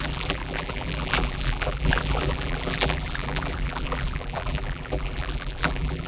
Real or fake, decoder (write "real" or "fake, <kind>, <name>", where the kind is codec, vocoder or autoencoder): fake, vocoder, BigVGAN v2